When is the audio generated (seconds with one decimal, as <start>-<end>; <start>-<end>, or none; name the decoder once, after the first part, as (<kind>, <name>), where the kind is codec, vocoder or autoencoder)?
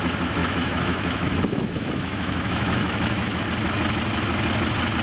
0.4-3.4 (autoencoder, DAC-VAE)